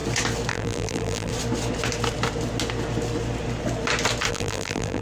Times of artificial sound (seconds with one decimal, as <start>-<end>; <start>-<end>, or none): 0.5-1.3; 4.3-5.0